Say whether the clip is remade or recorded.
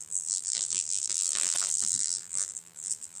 remade